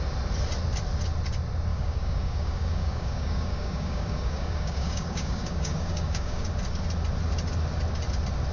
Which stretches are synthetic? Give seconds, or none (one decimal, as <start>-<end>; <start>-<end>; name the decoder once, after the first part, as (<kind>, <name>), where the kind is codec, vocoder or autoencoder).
1.7-6.5 (codec, DAC)